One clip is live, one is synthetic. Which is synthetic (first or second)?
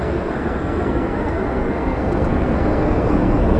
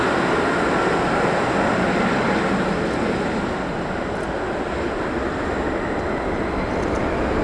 first